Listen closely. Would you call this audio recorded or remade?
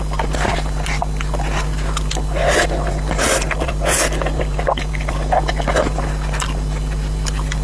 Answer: recorded